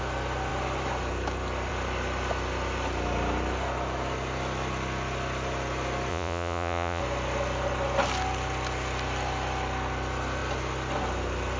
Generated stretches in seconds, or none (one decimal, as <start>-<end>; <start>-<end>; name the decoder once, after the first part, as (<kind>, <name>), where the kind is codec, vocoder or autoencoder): 6.1-7.0 (vocoder, Vocos)